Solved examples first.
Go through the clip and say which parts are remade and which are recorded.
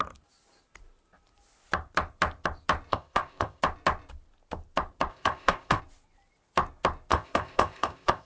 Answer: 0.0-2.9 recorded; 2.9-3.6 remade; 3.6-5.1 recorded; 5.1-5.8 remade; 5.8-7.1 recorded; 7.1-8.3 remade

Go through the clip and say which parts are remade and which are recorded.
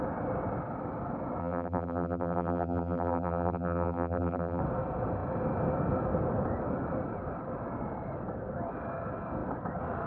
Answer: 0.0-1.4 recorded; 1.4-4.6 remade; 4.6-10.1 recorded